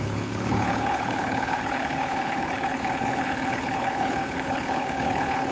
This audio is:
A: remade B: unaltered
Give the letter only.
A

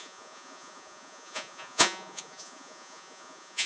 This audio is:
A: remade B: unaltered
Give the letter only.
A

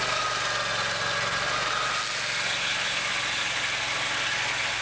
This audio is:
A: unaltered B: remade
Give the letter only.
A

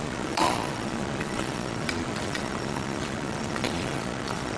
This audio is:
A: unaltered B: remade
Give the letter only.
B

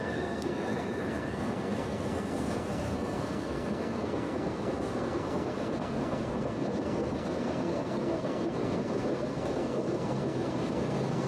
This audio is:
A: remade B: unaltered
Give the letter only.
A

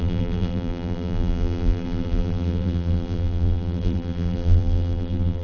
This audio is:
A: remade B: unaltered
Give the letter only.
A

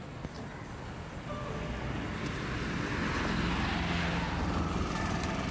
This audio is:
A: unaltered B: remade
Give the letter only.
A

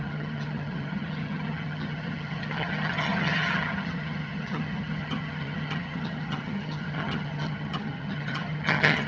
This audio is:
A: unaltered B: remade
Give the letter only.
B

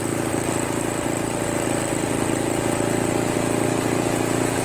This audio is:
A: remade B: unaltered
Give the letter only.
B